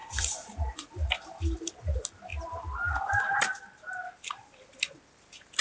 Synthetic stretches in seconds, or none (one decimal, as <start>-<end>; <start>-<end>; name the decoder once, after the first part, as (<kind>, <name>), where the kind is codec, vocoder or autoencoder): 0.0-0.9 (vocoder, Vocos)